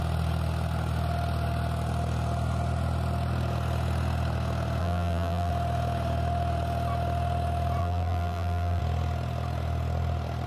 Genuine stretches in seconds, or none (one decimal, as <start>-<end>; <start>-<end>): 0.0-4.8; 5.5-7.8; 8.8-10.5